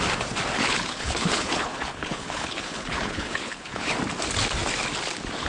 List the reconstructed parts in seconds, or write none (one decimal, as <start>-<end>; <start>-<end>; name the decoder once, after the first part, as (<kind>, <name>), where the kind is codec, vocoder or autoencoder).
0.6-3.9 (codec, HILCodec)